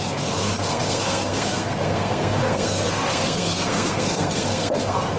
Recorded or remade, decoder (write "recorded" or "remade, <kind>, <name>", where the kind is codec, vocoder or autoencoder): remade, codec, SNAC